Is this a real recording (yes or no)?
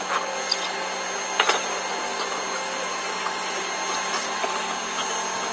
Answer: yes